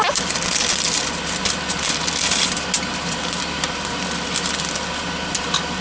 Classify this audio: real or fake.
real